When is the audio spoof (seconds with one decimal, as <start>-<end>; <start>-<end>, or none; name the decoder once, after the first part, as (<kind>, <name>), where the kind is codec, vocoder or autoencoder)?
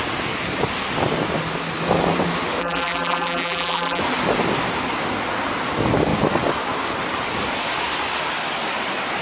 2.6-4.0 (vocoder, BigVGAN v2)